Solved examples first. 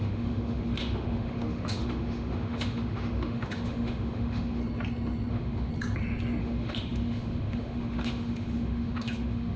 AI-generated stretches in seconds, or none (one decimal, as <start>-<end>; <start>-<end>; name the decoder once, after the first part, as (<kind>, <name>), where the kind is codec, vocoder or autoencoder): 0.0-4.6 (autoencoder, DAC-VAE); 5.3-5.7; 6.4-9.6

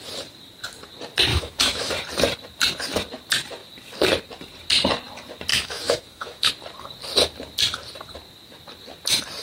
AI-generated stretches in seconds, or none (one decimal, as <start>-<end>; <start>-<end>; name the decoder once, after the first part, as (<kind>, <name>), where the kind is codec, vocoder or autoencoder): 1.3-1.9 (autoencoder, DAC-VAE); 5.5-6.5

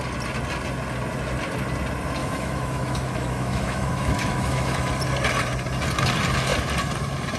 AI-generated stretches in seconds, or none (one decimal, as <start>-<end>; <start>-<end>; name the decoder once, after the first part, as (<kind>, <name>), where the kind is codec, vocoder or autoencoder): 2.2-4.9 (autoencoder, DAC-VAE)

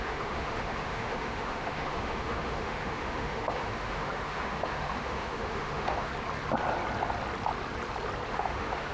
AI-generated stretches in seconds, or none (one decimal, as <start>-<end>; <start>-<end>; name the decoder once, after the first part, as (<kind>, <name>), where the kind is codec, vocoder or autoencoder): 0.0-6.1 (autoencoder, DAC-VAE); 8.3-8.9

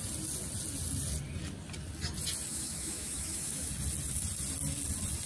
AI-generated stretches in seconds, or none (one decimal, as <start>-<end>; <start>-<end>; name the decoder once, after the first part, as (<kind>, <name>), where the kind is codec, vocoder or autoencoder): 2.5-3.7 (autoencoder, DAC-VAE)

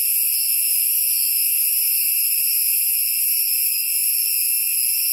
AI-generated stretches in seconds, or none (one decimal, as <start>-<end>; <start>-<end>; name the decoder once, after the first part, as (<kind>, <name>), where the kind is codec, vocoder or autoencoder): none